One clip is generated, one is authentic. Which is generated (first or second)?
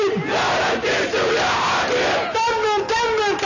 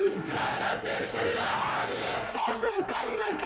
second